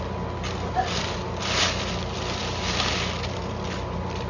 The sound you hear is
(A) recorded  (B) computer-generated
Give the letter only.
A